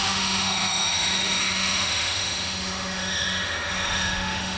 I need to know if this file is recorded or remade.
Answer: remade